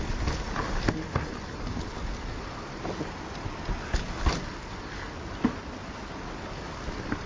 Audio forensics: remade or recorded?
recorded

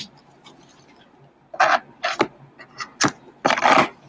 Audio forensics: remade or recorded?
recorded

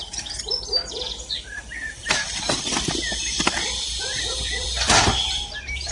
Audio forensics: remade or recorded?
remade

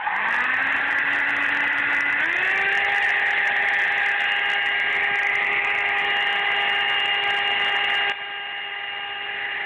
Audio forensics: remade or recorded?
recorded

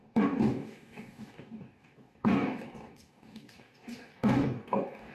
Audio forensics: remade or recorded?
remade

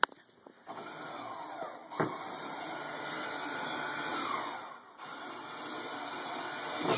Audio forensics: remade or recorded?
recorded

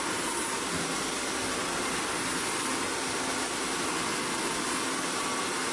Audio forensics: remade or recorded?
recorded